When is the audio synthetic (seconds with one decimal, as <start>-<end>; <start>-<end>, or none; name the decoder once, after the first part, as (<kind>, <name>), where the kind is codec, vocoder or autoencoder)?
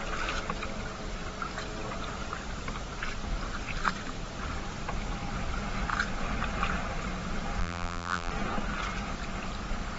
7.6-8.3 (vocoder, BigVGAN v2)